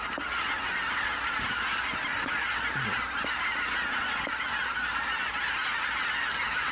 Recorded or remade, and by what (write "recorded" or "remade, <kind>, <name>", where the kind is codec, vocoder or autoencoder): recorded